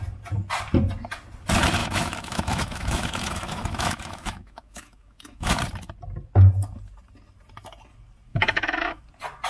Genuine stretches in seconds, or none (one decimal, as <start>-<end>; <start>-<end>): 0.0-1.8; 5.6-8.3; 9.0-9.5